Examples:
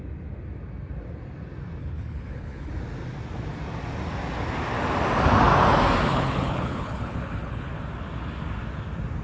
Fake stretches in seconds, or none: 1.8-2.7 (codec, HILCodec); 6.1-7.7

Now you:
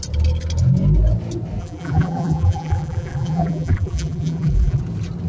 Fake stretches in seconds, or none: 1.6-4.8 (vocoder, BigVGAN v2)